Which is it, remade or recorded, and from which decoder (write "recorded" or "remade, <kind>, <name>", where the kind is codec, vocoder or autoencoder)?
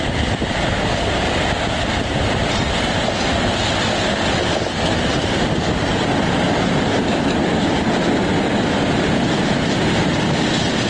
recorded